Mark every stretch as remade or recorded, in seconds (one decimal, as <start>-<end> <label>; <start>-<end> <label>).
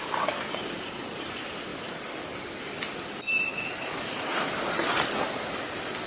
0.0-3.5 recorded; 3.5-4.5 remade; 4.5-6.1 recorded